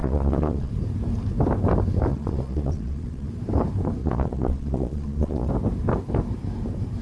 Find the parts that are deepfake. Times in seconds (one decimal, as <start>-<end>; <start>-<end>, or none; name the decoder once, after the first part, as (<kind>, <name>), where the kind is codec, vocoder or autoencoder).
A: 0.0-0.7 (vocoder, Vocos); 2.1-3.3; 4.0-5.5